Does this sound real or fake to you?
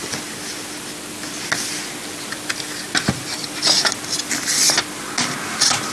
real